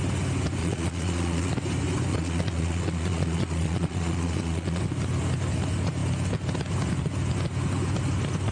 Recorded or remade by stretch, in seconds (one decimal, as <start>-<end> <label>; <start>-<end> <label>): 0.0-0.6 recorded; 0.6-1.5 remade; 1.5-2.1 recorded; 2.1-4.8 remade; 4.8-8.5 recorded